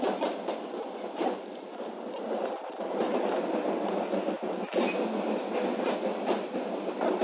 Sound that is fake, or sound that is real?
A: real